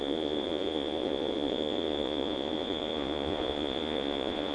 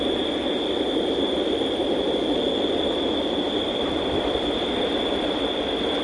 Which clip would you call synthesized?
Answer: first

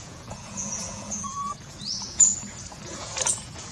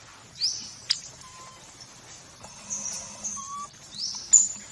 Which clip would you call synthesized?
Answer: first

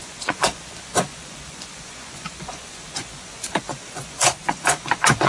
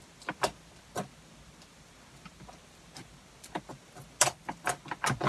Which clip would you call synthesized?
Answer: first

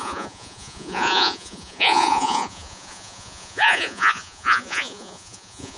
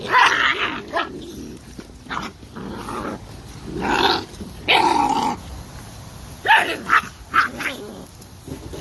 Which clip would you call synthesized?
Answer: first